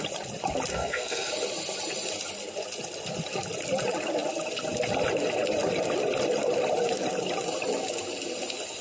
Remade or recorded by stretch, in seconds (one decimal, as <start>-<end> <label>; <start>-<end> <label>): 0.0-0.7 recorded; 0.7-1.3 remade; 1.3-8.8 recorded